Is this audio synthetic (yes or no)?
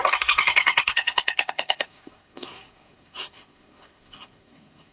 yes